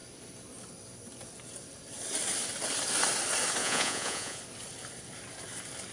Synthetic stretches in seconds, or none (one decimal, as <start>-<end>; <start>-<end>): 3.6-4.4